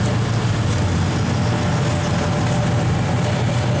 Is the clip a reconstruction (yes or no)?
no